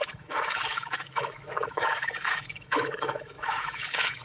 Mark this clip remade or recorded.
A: remade